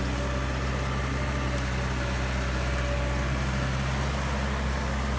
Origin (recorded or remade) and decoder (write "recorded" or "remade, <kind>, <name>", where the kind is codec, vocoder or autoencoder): recorded